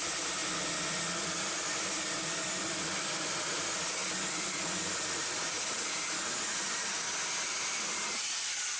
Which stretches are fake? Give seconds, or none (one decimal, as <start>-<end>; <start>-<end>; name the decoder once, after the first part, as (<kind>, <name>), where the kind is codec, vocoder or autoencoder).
0.0-0.4 (vocoder, BigVGAN v2); 1.1-8.8